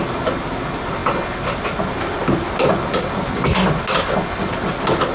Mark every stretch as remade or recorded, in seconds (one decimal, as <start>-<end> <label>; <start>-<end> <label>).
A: 0.0-5.1 recorded